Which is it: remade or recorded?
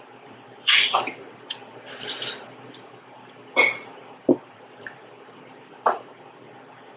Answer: remade